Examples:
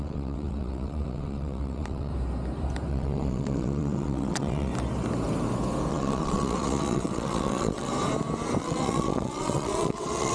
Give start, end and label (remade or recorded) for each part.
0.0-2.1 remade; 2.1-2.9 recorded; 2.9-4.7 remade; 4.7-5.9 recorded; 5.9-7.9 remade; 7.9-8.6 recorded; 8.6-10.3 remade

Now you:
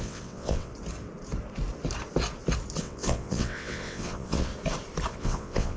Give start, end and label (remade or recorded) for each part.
0.0-0.7 remade; 0.7-2.8 recorded; 2.8-4.5 remade; 4.5-5.1 recorded; 5.1-5.8 remade

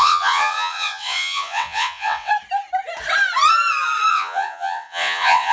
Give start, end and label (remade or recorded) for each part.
0.0-2.3 remade; 2.3-4.1 recorded; 4.1-5.5 remade

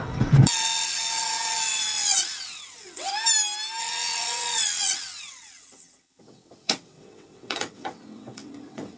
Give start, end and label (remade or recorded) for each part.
0.0-3.1 remade; 3.1-3.8 recorded; 3.8-9.0 remade

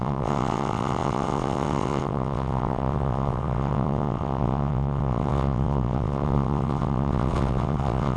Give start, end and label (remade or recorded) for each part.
0.0-8.2 remade

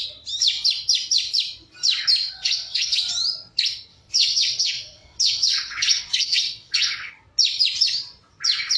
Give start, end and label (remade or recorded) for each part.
0.0-2.2 recorded; 2.2-3.1 remade; 3.1-3.9 recorded; 3.9-7.1 remade; 7.1-8.8 recorded

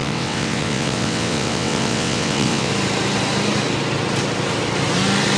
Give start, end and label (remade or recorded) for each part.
0.0-2.7 remade; 2.7-5.4 recorded

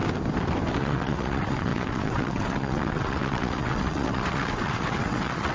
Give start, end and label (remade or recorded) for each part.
0.0-0.8 recorded; 0.8-5.5 remade